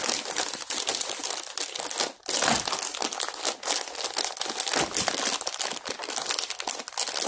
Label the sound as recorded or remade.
recorded